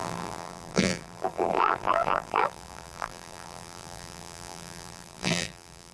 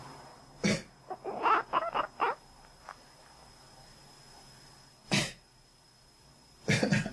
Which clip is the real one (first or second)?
second